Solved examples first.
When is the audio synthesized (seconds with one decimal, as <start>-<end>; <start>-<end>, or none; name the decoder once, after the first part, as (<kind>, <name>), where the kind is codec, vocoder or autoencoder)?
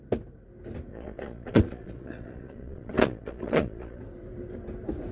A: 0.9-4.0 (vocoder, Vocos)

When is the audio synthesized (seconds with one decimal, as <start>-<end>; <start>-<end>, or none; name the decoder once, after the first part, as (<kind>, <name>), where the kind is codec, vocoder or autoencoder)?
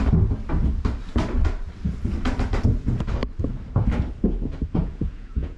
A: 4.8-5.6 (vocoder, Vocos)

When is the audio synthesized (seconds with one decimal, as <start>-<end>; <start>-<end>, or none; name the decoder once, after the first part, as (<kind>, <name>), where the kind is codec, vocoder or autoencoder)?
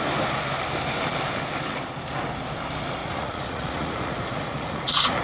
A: 3.0-5.2 (vocoder, Vocos)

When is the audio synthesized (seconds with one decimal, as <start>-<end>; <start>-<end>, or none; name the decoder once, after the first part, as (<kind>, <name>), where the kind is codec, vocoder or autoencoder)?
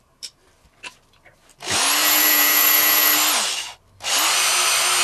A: 2.0-3.1 (vocoder, Vocos)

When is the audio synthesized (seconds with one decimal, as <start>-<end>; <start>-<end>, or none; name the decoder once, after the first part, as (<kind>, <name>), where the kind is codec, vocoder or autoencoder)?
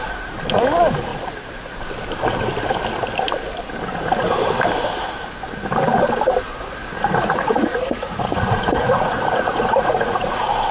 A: 6.8-10.7 (vocoder, Vocos)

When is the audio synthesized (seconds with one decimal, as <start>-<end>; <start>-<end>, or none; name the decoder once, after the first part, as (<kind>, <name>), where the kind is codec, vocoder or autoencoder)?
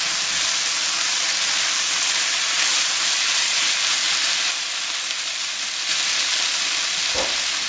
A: none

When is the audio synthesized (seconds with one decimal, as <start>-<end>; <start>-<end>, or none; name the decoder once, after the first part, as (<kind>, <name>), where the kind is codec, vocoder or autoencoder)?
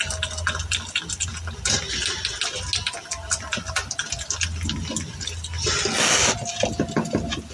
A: none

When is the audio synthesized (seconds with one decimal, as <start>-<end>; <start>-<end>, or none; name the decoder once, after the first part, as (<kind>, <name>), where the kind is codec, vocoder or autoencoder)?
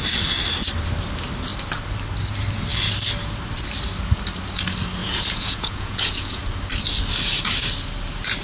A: 5.0-6.4 (vocoder, Vocos)